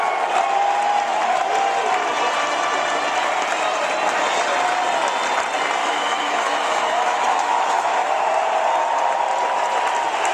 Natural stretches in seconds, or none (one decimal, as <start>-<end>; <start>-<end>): 0.0-5.8; 8.2-10.3